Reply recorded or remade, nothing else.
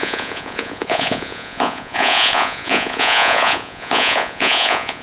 remade